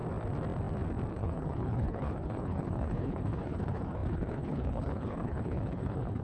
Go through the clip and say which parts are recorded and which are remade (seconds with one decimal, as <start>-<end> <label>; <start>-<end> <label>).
0.0-1.1 recorded; 1.1-6.2 remade